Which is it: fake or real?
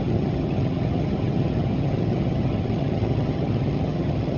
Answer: fake